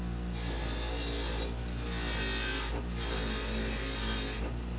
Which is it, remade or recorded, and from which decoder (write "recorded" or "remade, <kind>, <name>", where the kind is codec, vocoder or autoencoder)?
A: recorded